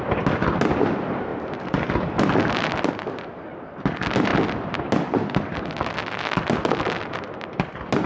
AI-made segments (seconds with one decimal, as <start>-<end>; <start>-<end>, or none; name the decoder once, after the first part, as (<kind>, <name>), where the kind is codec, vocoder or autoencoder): none